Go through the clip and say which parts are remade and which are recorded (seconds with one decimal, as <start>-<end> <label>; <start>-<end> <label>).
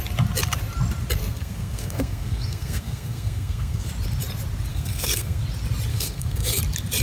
0.0-1.2 recorded; 1.2-3.9 remade; 3.9-4.7 recorded; 4.7-5.4 remade; 5.4-5.9 recorded; 5.9-6.6 remade; 6.6-7.0 recorded